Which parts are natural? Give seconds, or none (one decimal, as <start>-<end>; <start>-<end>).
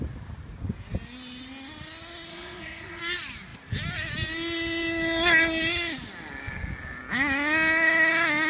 0.0-2.3; 3.0-8.5